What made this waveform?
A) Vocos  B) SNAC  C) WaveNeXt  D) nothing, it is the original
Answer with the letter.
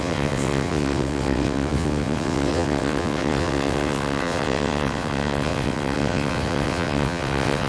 C